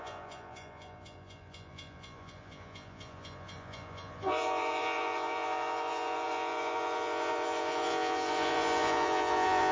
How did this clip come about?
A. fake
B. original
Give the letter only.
A